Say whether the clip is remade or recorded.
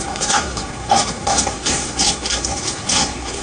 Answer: remade